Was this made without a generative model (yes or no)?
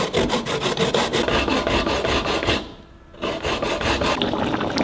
yes